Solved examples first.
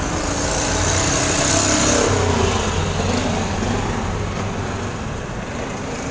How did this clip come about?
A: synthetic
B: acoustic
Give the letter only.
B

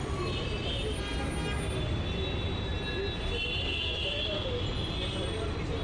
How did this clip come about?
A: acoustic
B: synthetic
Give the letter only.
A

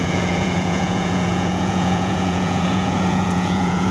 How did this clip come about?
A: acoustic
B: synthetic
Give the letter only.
B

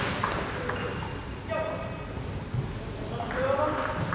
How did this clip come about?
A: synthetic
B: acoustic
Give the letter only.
B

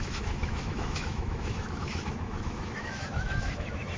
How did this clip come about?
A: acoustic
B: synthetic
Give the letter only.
B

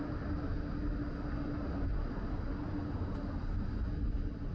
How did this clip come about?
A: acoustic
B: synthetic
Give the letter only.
A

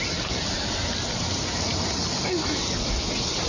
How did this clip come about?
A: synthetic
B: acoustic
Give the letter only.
B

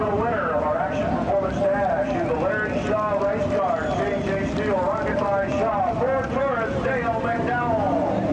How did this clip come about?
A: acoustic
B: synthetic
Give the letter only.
A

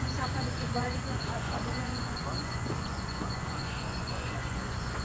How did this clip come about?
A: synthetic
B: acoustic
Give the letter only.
A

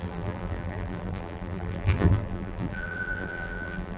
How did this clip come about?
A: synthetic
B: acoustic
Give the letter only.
A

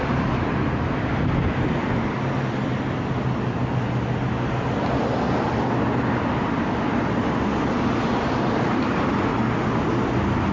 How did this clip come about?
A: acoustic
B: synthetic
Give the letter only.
A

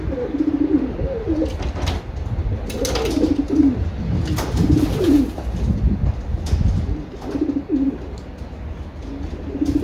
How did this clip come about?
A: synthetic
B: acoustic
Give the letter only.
B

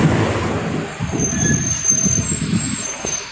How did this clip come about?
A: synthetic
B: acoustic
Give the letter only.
A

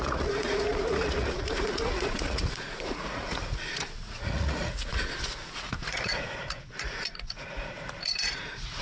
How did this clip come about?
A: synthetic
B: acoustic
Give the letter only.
A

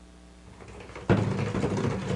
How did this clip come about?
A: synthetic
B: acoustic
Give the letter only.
B